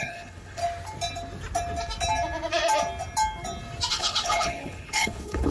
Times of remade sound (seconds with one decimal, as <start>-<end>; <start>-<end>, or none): 0.0-0.6; 3.9-5.5